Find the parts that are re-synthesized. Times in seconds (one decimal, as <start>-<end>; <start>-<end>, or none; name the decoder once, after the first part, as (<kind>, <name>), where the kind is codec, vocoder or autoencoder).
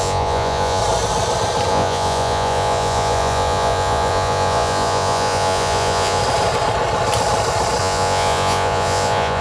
0.0-0.8 (vocoder, Vocos); 1.7-6.2; 7.8-9.4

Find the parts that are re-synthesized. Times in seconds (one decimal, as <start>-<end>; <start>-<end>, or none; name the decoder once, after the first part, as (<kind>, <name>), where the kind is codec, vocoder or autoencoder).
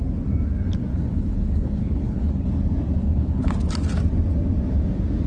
0.9-2.5 (codec, HILCodec); 3.0-3.5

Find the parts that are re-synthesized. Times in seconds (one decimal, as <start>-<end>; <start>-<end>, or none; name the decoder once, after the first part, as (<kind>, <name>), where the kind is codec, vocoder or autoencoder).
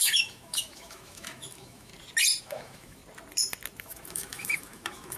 0.0-1.9 (autoencoder, DAC-VAE); 2.4-3.0; 3.8-5.2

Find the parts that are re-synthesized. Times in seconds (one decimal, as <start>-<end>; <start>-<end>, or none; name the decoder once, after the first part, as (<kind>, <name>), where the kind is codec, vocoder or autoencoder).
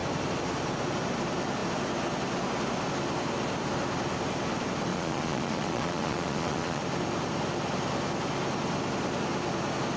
4.9-6.8 (vocoder, Vocos)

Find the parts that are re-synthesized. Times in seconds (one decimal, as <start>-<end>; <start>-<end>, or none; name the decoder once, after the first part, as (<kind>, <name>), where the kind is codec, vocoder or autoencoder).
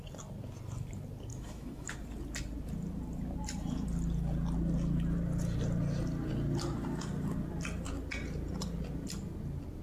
1.3-1.9 (autoencoder, DAC-VAE)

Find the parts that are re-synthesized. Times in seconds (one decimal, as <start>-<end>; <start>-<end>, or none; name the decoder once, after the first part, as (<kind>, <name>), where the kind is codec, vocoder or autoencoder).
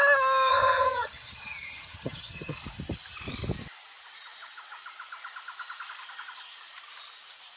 0.5-2.6 (vocoder, HiFi-GAN)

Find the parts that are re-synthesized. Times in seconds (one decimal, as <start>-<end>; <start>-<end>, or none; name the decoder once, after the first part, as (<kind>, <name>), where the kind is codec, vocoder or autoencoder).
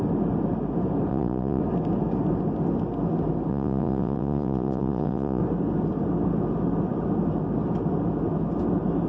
1.1-1.6 (vocoder, Vocos); 3.5-5.4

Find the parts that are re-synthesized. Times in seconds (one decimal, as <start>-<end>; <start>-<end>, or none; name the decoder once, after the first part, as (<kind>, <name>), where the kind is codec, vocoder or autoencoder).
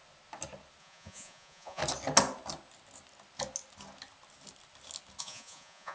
0.8-1.8 (vocoder, Vocos); 5.2-5.9